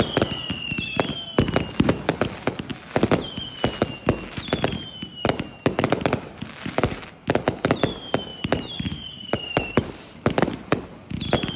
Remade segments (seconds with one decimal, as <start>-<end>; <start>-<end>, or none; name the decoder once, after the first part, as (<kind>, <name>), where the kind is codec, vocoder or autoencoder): 5.1-7.0 (vocoder, BigVGAN v2); 8.3-9.8